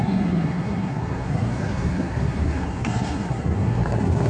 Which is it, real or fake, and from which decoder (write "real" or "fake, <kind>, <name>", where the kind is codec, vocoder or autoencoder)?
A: fake, codec, SNAC